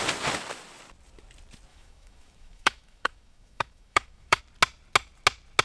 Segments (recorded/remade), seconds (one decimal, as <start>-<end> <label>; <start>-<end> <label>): 0.0-1.7 recorded; 1.7-4.4 remade; 4.4-5.6 recorded